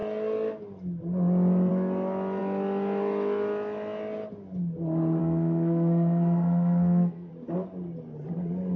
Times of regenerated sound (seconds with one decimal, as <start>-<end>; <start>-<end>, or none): 5.2-7.3